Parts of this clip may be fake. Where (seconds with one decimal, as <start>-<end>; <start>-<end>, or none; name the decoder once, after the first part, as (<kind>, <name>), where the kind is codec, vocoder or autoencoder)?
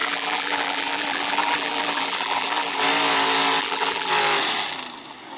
0.0-2.8 (vocoder, BigVGAN v2); 3.6-4.1